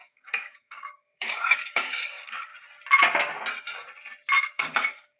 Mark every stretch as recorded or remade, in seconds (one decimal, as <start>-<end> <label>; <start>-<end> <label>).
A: 0.0-2.5 remade; 2.5-4.4 recorded; 4.4-5.2 remade